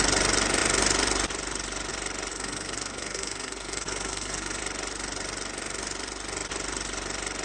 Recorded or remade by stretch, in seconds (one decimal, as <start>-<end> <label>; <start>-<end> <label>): 0.0-2.3 recorded; 2.3-4.6 remade; 4.6-7.4 recorded